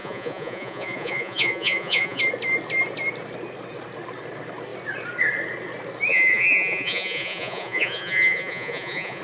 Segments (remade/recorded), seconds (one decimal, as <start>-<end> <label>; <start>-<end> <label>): 0.0-2.2 remade; 2.2-6.1 recorded; 6.1-9.2 remade